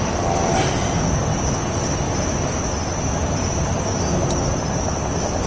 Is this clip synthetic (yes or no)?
no